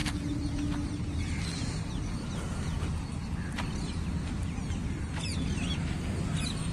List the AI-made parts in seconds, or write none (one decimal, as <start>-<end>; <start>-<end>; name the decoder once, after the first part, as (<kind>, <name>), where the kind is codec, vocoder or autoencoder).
none